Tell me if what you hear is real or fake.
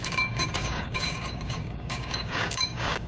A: fake